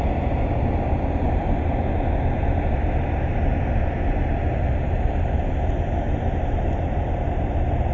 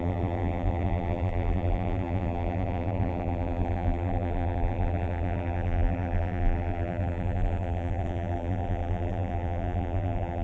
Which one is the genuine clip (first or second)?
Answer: first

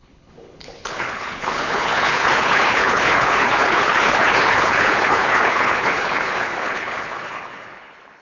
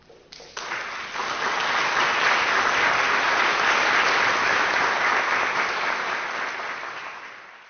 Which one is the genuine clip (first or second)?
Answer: second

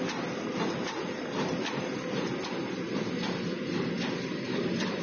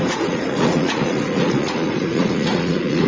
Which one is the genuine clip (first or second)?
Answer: first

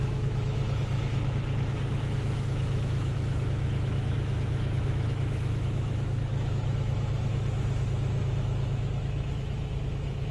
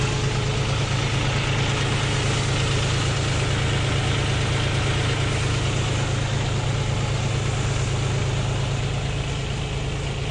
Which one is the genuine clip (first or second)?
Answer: second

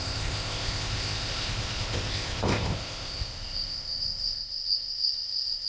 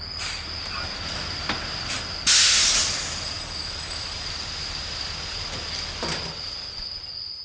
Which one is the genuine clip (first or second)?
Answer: second